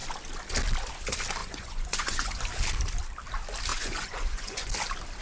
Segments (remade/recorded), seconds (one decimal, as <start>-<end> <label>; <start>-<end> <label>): 0.0-1.4 recorded; 1.4-2.4 remade; 2.4-3.7 recorded; 3.7-4.7 remade; 4.7-5.2 recorded

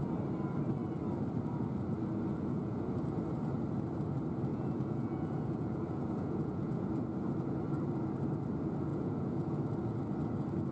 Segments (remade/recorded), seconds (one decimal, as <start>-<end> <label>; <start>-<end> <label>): 0.0-2.3 recorded; 2.3-2.9 remade; 2.9-4.5 recorded; 4.5-6.9 remade; 6.9-8.9 recorded; 8.9-9.6 remade; 9.6-10.7 recorded

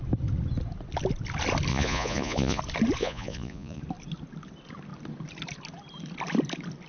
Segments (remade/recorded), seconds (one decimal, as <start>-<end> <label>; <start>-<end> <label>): 0.0-1.7 recorded; 1.7-2.6 remade; 2.6-3.0 recorded; 3.0-3.8 remade; 3.8-6.9 recorded

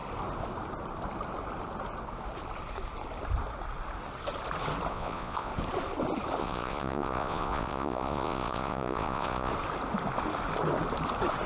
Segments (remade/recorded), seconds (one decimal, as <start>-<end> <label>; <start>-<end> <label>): 0.0-4.9 recorded; 4.9-5.5 remade; 5.5-6.4 recorded; 6.4-9.5 remade; 9.5-11.5 recorded

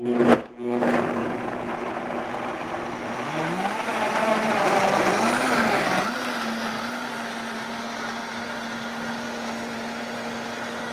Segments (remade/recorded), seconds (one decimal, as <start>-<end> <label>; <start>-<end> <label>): 0.0-1.2 recorded; 1.2-2.0 remade; 2.0-10.9 recorded

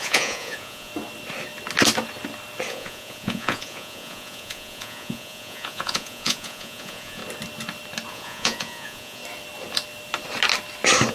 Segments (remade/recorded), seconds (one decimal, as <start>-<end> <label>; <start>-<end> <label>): 0.0-0.9 remade; 0.9-2.7 recorded; 2.7-7.2 remade; 7.2-8.1 recorded; 8.1-9.2 remade; 9.2-11.1 recorded